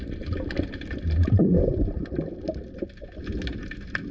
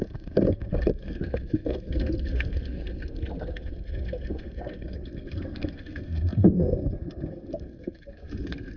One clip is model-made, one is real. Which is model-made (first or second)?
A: second